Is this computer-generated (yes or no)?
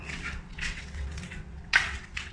yes